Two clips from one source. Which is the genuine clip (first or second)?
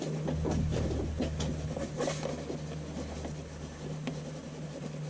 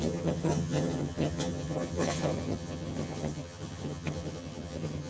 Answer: first